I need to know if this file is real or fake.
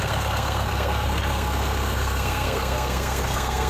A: fake